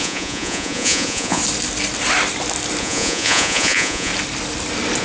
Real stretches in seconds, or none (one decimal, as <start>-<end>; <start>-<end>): 1.4-2.8; 4.1-5.0